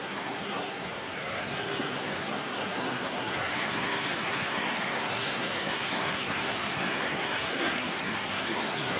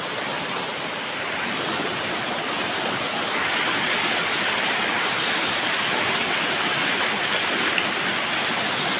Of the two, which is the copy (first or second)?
first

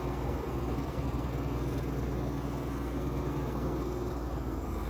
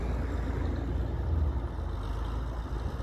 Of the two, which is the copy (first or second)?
first